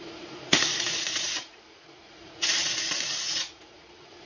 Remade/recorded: remade